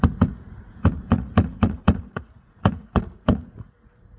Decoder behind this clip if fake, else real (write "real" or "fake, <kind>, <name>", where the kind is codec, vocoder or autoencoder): fake, vocoder, Vocos